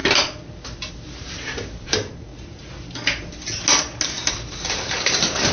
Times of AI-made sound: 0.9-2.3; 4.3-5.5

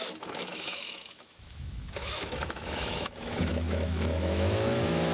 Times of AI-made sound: 0.0-5.1